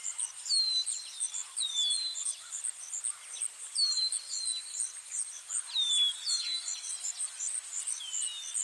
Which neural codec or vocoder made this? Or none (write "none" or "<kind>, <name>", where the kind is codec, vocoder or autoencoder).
none